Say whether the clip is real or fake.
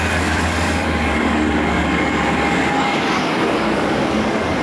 fake